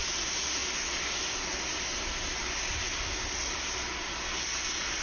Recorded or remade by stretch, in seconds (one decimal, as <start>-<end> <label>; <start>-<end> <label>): 0.0-5.0 recorded